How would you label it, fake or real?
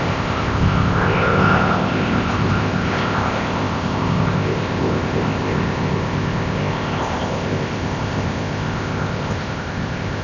fake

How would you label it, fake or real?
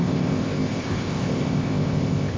fake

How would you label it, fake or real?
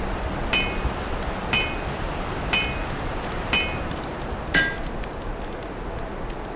real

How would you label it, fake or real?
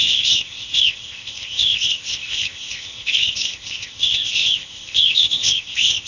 fake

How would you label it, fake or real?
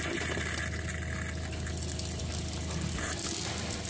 real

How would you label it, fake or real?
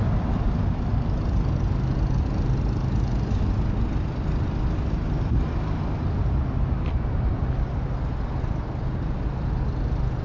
real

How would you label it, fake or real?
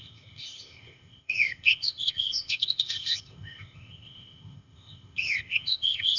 fake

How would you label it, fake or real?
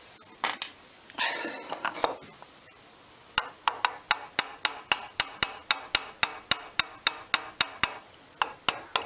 real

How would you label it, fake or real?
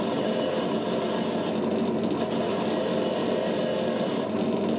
real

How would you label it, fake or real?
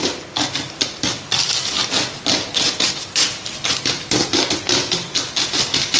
real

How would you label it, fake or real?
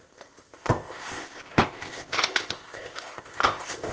fake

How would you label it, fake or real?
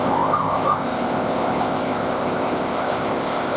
fake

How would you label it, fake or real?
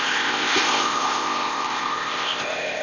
fake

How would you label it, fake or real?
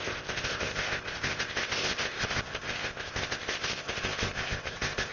fake